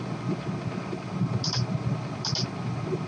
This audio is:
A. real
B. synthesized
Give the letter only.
A